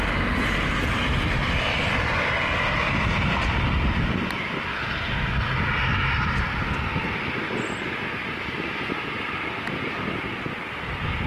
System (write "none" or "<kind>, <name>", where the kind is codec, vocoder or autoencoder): none